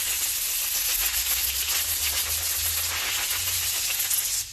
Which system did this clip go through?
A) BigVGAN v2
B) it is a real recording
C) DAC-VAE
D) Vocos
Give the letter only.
B